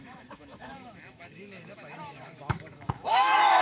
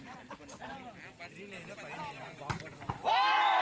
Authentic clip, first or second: second